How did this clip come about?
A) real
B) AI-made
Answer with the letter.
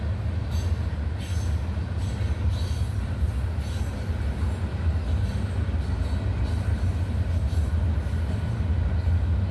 A